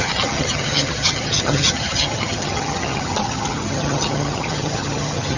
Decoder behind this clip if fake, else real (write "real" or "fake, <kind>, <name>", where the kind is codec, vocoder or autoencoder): fake, vocoder, HiFi-GAN